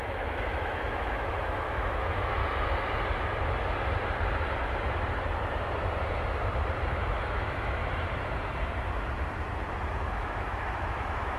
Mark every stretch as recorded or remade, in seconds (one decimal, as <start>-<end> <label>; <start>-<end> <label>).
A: 0.0-2.4 remade; 2.4-6.9 recorded; 6.9-7.8 remade; 7.8-10.0 recorded; 10.0-11.4 remade